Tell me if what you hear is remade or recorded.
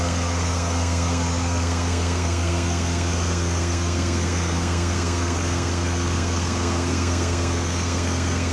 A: remade